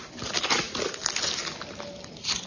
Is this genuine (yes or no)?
yes